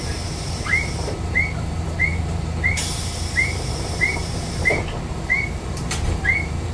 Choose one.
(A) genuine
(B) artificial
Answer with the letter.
B